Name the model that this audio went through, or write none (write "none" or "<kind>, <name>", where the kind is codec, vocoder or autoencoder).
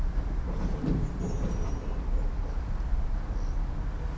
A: none